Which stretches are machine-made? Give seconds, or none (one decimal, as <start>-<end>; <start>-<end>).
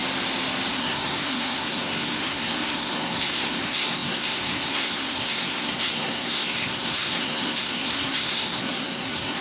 0.7-9.4